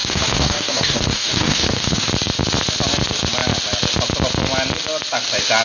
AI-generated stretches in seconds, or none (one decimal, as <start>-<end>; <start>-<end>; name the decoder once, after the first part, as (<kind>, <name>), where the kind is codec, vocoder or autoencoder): 0.0-2.1 (codec, DAC)